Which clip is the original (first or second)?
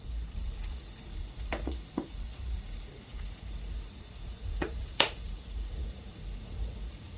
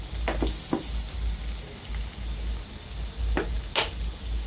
second